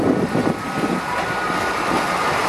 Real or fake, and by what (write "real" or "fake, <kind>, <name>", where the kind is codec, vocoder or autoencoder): real